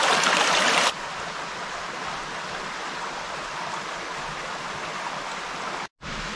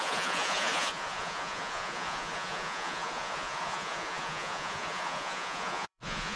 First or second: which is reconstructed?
second